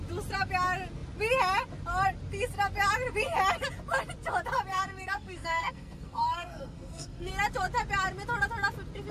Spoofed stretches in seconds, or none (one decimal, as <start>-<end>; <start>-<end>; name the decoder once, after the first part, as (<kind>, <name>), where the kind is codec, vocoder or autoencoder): 4.7-7.3 (codec, SNAC)